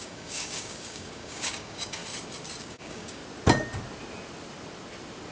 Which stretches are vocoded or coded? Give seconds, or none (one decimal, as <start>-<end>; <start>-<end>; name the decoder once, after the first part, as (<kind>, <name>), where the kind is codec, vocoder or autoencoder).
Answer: 0.0-2.0 (codec, DAC); 2.6-3.2

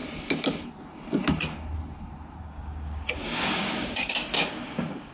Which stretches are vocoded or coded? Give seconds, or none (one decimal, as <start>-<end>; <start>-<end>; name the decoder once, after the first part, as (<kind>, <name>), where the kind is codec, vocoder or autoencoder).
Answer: 2.4-5.1 (codec, DAC)

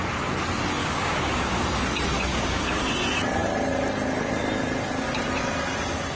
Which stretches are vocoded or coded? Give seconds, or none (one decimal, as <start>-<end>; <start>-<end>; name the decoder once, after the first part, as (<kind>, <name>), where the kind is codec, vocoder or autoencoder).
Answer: 0.8-1.6 (codec, DAC); 2.3-2.8